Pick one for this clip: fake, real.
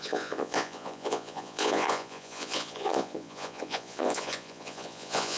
fake